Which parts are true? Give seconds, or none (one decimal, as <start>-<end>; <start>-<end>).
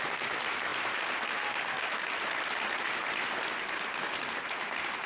0.0-5.1